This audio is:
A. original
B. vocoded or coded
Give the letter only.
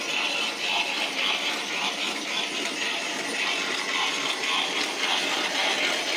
B